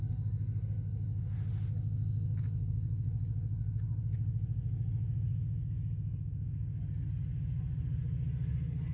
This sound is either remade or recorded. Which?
recorded